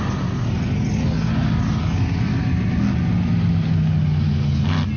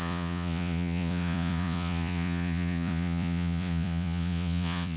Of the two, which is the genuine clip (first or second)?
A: first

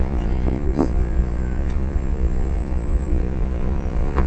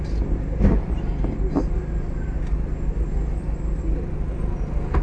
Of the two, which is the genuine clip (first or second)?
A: second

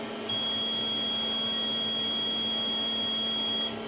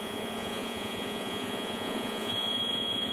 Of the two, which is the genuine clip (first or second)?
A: first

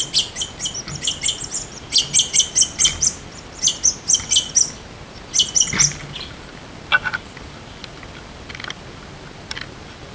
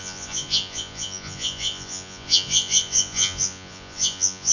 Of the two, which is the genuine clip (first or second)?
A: first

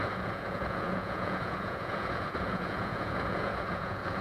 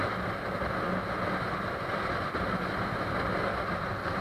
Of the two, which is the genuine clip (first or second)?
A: second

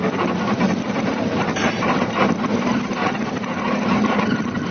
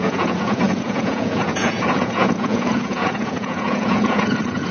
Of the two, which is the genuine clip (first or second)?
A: first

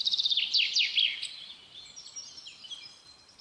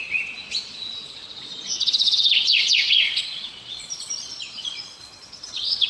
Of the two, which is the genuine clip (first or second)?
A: first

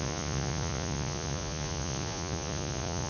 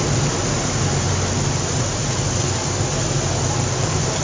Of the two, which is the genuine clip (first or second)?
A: second